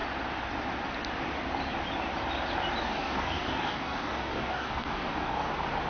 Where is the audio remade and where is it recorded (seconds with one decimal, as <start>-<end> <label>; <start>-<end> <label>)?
0.0-2.8 recorded; 2.8-5.5 remade; 5.5-5.9 recorded